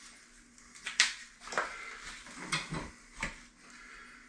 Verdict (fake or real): real